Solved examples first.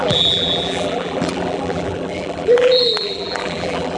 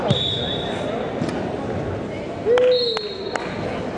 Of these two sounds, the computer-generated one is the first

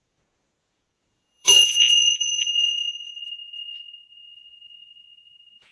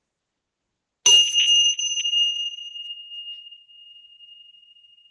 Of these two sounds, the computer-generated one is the first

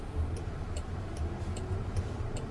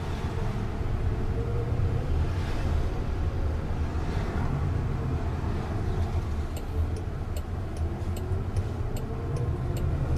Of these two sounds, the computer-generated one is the first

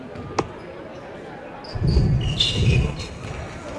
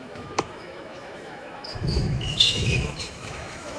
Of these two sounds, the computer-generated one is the second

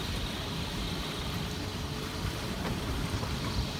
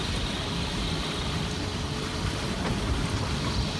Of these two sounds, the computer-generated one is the first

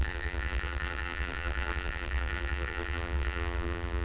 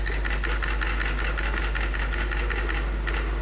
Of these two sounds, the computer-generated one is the first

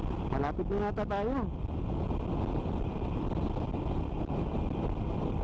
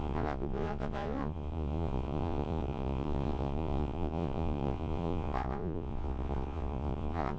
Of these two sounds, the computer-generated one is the second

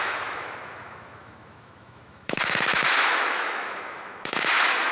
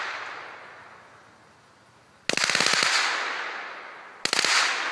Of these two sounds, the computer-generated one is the first